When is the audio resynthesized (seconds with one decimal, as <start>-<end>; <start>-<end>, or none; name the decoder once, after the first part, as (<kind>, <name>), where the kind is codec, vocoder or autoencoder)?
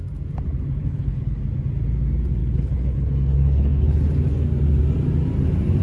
0.8-1.4 (codec, HILCodec); 2.4-4.0